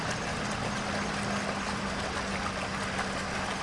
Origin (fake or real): real